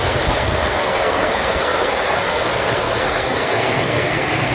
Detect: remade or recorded remade